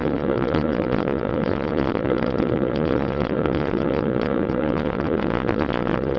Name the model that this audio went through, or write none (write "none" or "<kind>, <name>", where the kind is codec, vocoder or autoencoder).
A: vocoder, Vocos